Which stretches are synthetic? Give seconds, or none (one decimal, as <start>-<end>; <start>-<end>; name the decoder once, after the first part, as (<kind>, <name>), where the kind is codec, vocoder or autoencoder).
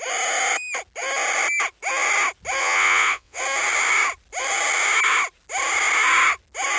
2.6-3.4 (vocoder, WaveNeXt)